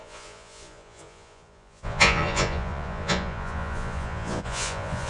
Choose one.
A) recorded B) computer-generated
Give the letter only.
B